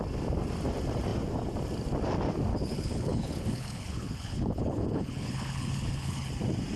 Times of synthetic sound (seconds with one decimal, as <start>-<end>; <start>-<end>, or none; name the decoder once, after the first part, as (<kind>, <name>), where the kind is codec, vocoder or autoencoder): 2.5-6.3 (codec, HILCodec)

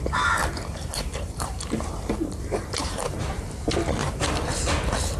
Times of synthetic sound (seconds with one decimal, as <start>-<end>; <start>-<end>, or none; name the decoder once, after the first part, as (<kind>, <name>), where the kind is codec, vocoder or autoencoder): 0.4-3.5 (vocoder, BigVGAN v2); 4.0-4.6

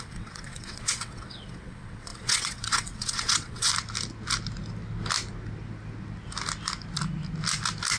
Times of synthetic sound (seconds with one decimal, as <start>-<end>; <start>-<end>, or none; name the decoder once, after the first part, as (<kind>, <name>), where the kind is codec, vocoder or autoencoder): 0.0-3.7 (vocoder, WaveNeXt)

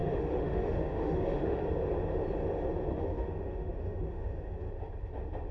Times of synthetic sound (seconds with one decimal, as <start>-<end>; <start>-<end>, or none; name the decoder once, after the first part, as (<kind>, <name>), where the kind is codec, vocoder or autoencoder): 0.0-1.6 (autoencoder, DAC-VAE); 2.9-4.7

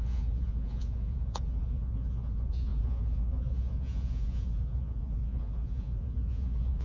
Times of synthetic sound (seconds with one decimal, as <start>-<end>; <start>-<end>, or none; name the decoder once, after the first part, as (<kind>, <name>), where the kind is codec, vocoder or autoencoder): 0.0-6.8 (vocoder, Vocos)

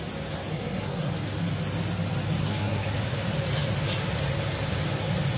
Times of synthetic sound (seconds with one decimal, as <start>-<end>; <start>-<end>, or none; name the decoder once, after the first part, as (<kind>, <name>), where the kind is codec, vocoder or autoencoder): 0.5-1.1 (codec, SNAC); 2.4-3.0

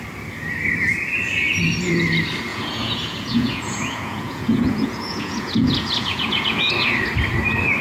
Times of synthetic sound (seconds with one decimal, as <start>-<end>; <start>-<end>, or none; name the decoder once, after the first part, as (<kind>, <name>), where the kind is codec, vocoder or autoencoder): 2.5-6.7 (vocoder, Vocos)

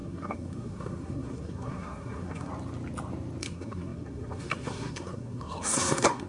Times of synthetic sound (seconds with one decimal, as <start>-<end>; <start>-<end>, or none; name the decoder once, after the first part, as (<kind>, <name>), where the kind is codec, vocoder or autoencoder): 0.0-2.5 (codec, SNAC); 3.4-6.3